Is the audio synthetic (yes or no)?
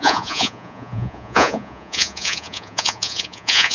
yes